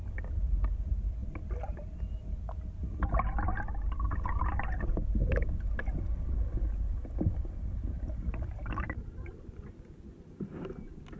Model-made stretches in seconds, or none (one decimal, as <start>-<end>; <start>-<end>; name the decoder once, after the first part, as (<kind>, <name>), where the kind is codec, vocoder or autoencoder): 1.2-2.0 (vocoder, BigVGAN v2); 7.0-10.0